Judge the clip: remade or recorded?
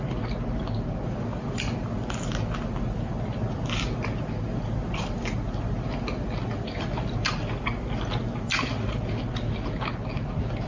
recorded